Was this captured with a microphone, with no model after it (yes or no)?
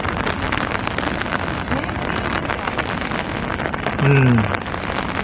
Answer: yes